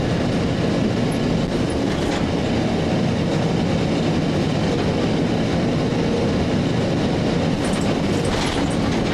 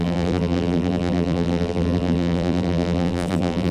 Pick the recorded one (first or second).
first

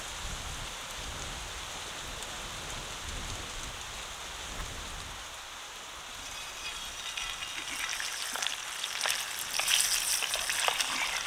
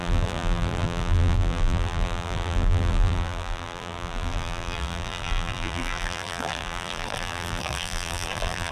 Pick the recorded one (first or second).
first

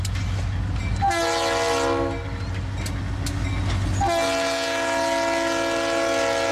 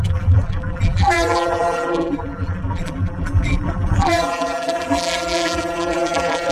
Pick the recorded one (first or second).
first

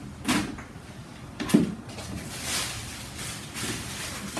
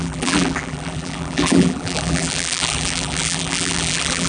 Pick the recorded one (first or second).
first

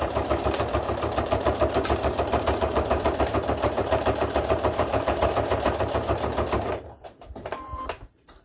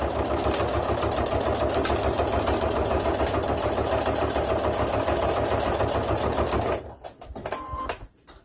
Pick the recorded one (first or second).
second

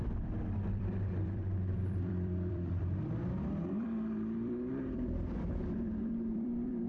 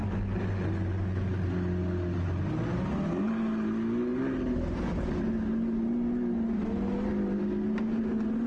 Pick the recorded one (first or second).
second